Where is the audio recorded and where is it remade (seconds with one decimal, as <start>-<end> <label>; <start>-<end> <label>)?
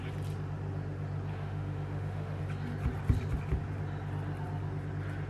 0.0-1.3 recorded; 1.3-2.4 remade; 2.4-5.3 recorded